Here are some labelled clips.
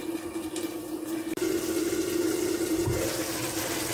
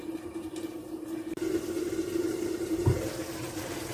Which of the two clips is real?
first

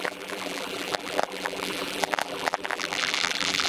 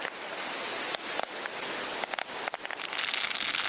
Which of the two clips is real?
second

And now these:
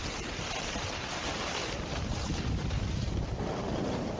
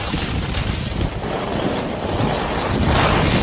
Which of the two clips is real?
second